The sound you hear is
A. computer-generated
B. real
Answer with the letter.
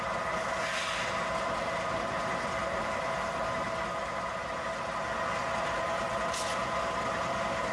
B